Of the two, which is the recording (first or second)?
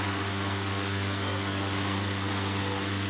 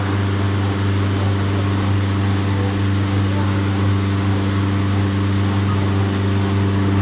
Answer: second